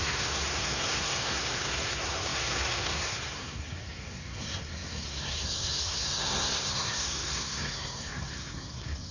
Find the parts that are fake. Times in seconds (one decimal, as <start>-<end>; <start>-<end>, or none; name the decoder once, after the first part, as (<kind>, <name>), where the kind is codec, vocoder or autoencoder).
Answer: 0.0-9.1 (codec, SNAC)